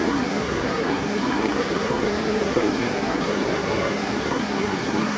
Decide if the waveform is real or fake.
fake